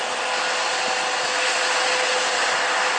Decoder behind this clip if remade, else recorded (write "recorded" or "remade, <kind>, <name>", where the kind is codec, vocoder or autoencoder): recorded